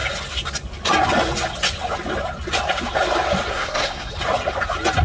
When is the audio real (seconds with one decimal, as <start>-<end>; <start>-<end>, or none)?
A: 0.0-3.5; 4.1-5.0

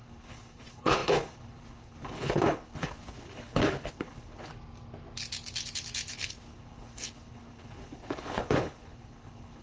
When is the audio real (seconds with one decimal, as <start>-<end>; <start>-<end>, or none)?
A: 4.5-6.1

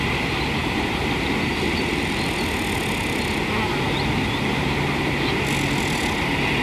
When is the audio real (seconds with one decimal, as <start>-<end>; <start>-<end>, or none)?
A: 0.0-0.6; 1.7-4.5; 5.1-6.6

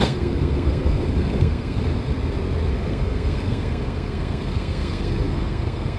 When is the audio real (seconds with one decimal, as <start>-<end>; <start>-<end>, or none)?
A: 1.9-2.7

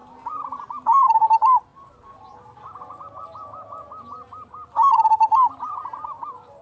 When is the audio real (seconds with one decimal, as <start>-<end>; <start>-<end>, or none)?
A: 0.6-6.6

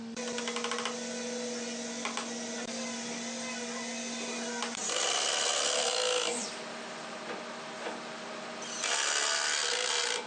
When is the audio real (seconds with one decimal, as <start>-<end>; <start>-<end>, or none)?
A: 0.0-10.3

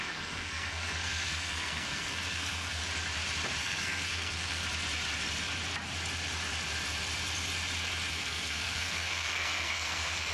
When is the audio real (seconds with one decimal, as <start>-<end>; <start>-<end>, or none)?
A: 2.8-3.6; 4.6-8.1